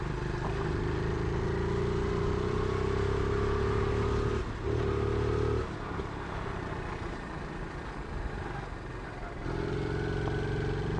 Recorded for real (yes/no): yes